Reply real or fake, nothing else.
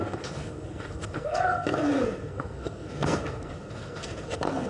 fake